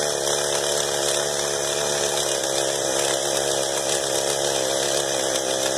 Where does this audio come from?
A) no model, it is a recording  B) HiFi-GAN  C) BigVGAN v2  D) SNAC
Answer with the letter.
A